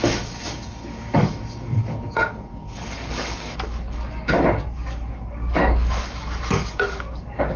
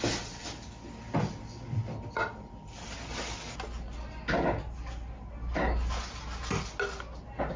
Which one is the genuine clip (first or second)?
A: second